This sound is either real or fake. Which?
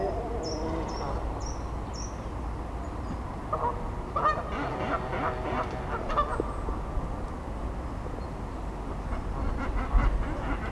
real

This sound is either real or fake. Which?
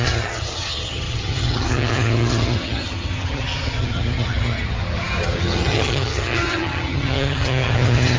fake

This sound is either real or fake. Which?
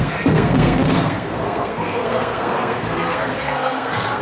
fake